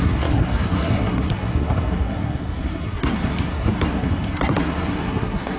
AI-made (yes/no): yes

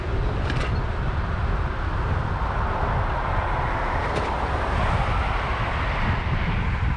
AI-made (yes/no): no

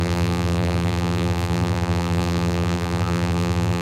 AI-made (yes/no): yes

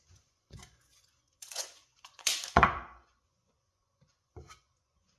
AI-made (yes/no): yes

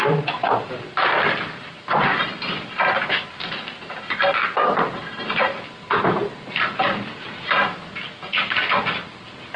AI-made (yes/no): no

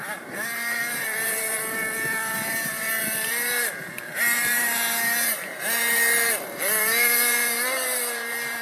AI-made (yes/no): yes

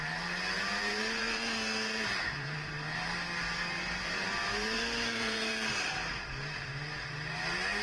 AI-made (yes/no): yes